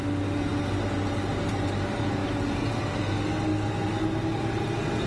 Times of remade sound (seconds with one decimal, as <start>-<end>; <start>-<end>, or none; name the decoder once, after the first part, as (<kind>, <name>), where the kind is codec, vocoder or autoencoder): none